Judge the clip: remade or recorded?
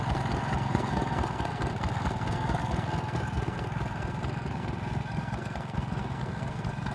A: remade